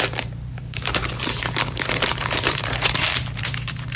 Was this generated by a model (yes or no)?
yes